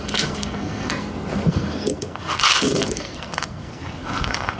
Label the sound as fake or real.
fake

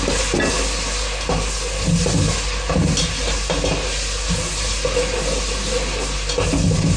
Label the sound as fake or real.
real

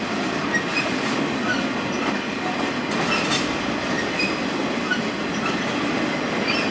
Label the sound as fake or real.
real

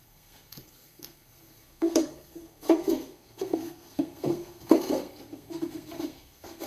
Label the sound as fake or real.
fake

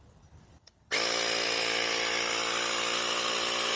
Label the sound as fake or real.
real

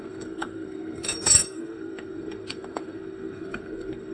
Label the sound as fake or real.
fake